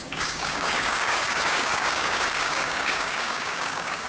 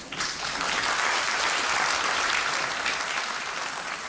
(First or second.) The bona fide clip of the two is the second